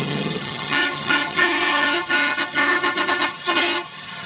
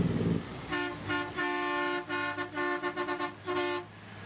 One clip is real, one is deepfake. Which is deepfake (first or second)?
first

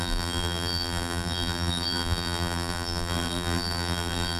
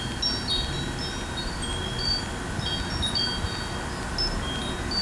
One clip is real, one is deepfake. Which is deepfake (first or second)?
first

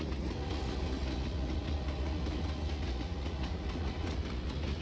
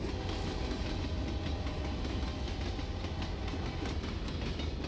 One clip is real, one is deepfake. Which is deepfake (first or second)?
first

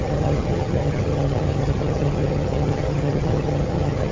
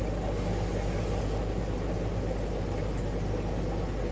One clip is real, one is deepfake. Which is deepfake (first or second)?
first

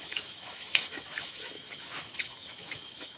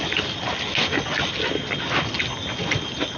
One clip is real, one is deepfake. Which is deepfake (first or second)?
first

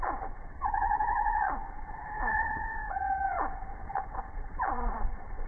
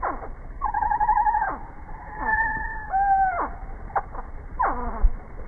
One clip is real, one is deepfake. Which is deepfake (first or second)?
first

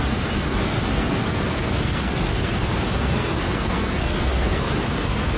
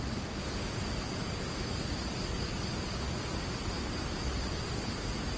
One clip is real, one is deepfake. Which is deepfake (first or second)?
first